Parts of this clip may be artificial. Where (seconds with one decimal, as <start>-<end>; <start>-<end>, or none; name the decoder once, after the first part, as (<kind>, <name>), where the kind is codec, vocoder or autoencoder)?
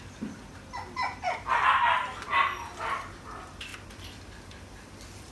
3.7-5.3 (vocoder, BigVGAN v2)